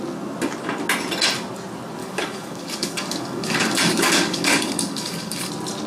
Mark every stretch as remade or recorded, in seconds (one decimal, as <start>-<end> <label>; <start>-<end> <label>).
0.0-2.0 recorded; 2.0-5.5 remade; 5.5-5.9 recorded